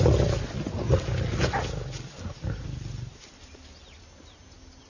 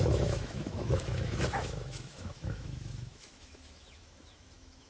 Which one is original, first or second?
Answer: first